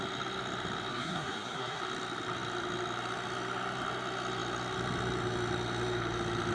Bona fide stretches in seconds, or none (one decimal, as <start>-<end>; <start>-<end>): 0.0-0.9; 1.8-6.5